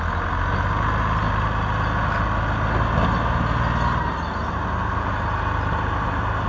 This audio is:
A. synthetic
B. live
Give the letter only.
B